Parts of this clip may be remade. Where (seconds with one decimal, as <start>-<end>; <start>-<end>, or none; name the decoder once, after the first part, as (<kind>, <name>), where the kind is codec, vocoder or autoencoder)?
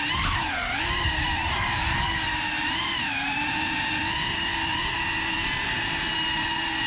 0.0-6.9 (vocoder, BigVGAN v2)